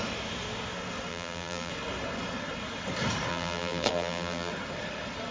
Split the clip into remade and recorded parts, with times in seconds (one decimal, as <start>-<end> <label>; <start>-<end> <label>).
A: 0.0-1.1 recorded; 1.1-1.7 remade; 1.7-3.3 recorded; 3.3-4.5 remade; 4.5-5.3 recorded